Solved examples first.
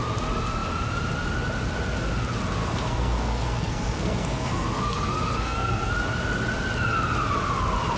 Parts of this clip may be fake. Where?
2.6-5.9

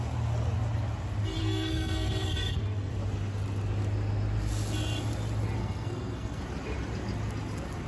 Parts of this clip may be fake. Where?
1.4-2.9; 5.6-6.4